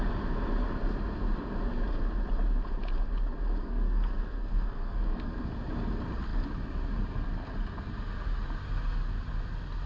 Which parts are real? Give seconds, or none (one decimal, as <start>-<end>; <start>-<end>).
0.0-3.6; 5.3-9.9